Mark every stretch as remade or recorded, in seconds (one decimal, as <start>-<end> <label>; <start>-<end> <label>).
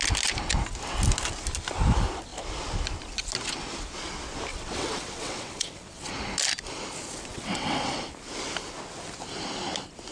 0.0-4.5 recorded; 4.5-6.1 remade; 6.1-7.3 recorded; 7.3-7.9 remade; 7.9-10.1 recorded